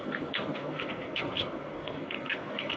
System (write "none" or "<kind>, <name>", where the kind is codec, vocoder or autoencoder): codec, SNAC